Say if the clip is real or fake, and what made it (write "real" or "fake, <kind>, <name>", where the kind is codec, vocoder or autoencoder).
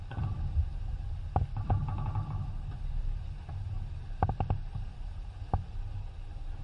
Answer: real